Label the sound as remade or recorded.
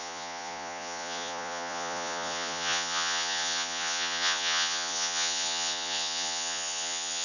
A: remade